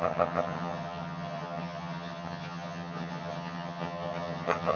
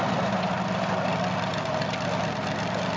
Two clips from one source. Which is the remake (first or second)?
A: first